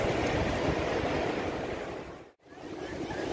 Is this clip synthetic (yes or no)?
no